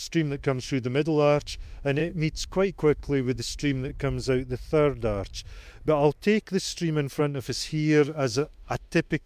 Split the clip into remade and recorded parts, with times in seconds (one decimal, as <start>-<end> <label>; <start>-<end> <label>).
0.0-3.9 remade; 3.9-7.2 recorded; 7.2-9.3 remade